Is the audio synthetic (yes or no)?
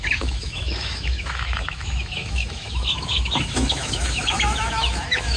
yes